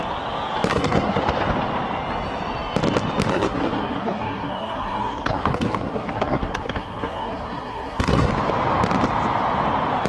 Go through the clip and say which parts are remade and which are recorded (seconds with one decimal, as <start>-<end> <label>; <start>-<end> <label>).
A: 0.0-0.7 recorded; 0.7-1.2 remade; 1.2-3.3 recorded; 3.3-8.3 remade; 8.3-10.1 recorded